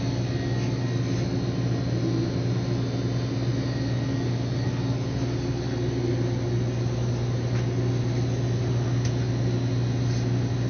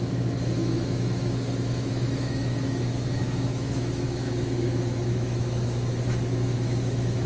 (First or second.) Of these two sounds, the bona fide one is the first